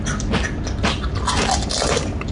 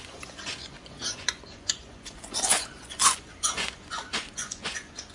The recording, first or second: first